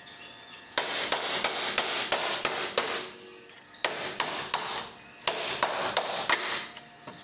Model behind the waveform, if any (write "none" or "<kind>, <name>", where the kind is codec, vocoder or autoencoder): none